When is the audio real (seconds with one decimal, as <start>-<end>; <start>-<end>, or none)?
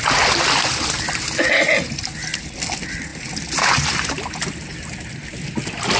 0.0-6.0